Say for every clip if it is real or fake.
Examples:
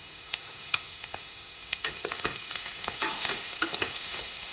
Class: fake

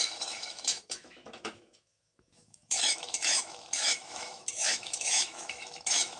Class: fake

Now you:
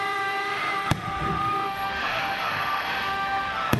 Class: fake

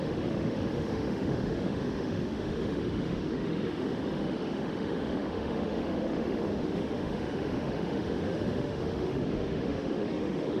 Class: fake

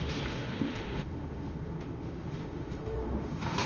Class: fake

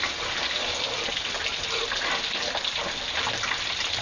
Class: real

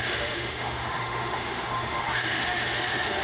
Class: fake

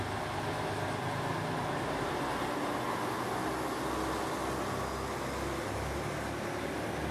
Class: real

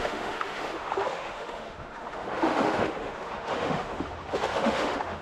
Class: fake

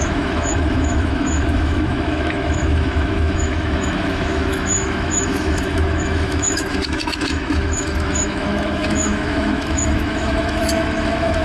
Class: fake